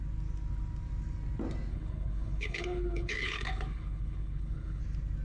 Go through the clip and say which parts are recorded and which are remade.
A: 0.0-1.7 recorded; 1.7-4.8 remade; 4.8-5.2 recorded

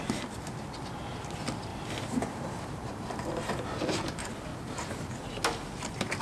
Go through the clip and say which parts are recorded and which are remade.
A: 0.0-1.7 recorded; 1.7-3.5 remade; 3.5-4.5 recorded; 4.5-5.2 remade; 5.2-6.2 recorded

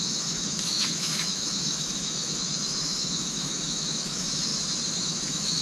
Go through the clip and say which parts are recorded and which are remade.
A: 0.0-4.5 remade; 4.5-5.0 recorded; 5.0-5.6 remade

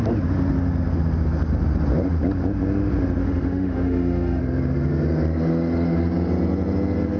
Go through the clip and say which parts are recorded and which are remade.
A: 0.0-3.2 recorded; 3.2-4.4 remade; 4.4-7.2 recorded

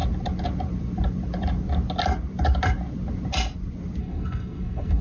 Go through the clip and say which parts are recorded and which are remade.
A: 0.0-4.0 recorded; 4.0-5.0 remade

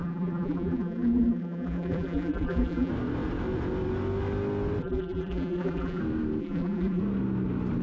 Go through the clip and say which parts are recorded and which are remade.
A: 0.0-2.9 remade; 2.9-4.8 recorded; 4.8-6.0 remade; 6.0-6.4 recorded; 6.4-7.0 remade; 7.0-7.8 recorded

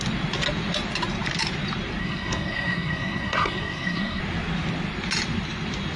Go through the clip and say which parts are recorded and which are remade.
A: 0.0-2.0 recorded; 2.0-4.2 remade; 4.2-6.0 recorded

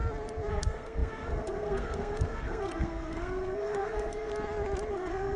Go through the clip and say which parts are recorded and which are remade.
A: 0.0-0.5 recorded; 0.5-4.3 remade; 4.3-4.9 recorded; 4.9-5.4 remade